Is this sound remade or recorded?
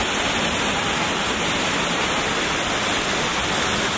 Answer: recorded